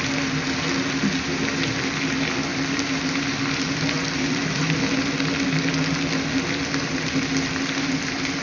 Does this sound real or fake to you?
real